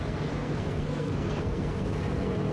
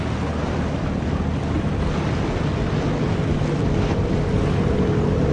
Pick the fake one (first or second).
first